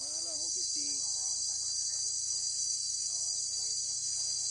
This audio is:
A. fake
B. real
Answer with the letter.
B